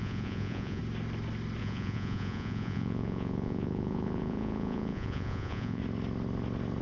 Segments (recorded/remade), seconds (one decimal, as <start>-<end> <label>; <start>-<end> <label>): 0.0-0.8 remade; 0.8-1.6 recorded; 1.6-5.8 remade; 5.8-6.8 recorded